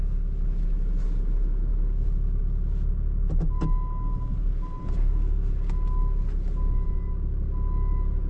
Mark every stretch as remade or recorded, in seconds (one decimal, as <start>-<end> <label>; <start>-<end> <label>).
0.0-5.0 recorded; 5.0-5.5 remade; 5.5-8.3 recorded